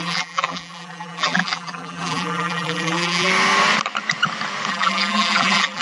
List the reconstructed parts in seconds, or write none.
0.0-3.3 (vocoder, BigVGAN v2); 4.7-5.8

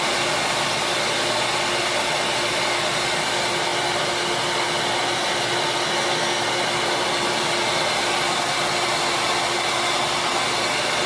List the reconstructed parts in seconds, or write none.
none

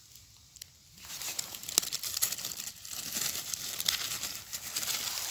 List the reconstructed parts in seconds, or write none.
none

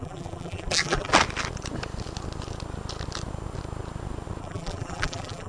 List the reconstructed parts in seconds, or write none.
0.0-1.1 (vocoder, BigVGAN v2); 4.4-5.5

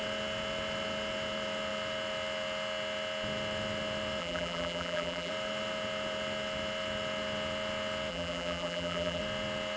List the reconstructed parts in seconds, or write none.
4.2-5.3 (vocoder, BigVGAN v2); 8.1-9.2

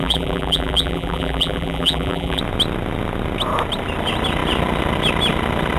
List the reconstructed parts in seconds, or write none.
0.0-2.4 (vocoder, BigVGAN v2)